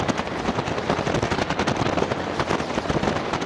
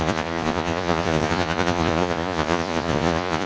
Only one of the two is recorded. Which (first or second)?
first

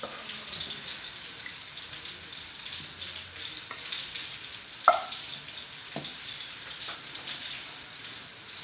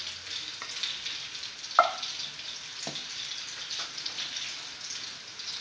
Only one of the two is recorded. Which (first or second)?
second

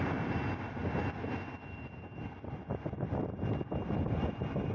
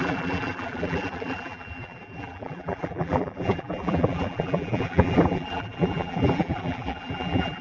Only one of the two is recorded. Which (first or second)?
first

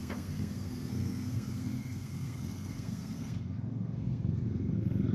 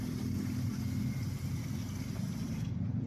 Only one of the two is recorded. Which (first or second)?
second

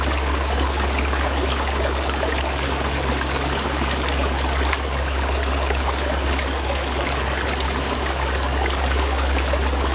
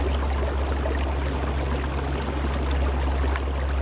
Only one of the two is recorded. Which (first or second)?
second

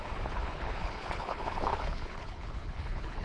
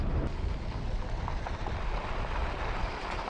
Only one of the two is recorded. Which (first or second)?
second